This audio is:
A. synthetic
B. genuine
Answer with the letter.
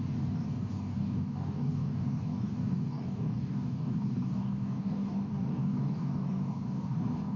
A